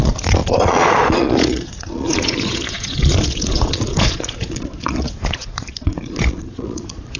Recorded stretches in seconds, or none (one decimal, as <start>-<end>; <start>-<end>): none